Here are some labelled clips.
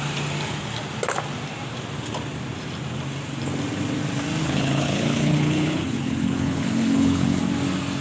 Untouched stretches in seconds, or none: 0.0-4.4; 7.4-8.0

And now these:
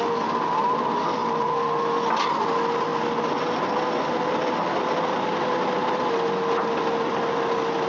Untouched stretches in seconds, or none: 0.0-7.9

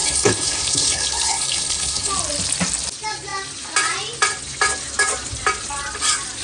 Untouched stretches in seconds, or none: 2.1-6.4

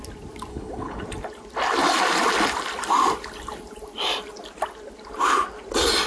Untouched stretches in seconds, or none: 0.0-0.5; 1.0-6.1

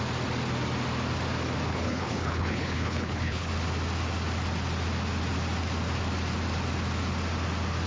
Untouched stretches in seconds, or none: 0.0-1.7; 3.5-7.9

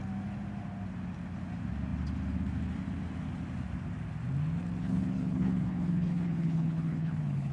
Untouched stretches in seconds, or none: 0.0-4.8

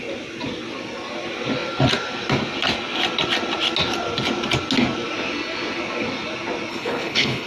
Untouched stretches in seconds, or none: 0.0-6.7

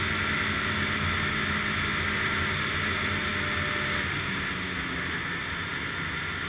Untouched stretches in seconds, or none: 0.0-6.5